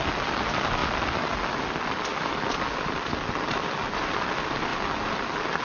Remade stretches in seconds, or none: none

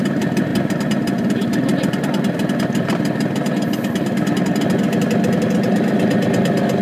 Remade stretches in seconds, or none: none

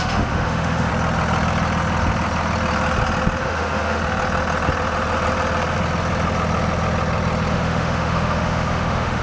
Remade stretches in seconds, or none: 0.0-0.9 (autoencoder, DAC-VAE); 3.4-4.0; 7.5-9.2

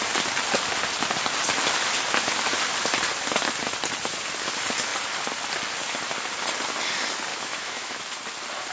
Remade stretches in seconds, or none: 7.3-8.0 (autoencoder, DAC-VAE)

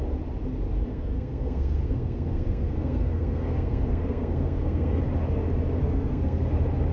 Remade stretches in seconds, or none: 0.9-5.0 (codec, SNAC); 5.8-6.5